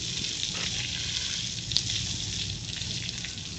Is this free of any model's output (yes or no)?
yes